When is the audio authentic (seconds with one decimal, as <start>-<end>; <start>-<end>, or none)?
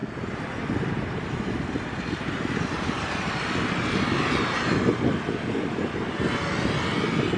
0.0-7.4